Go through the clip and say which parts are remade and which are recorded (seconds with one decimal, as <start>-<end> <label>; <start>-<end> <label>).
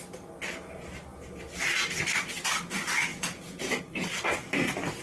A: 0.0-3.1 recorded; 3.1-3.8 remade; 3.8-5.0 recorded